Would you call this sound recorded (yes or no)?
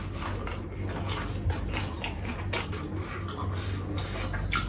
yes